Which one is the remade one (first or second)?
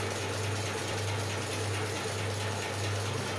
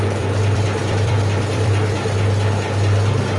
second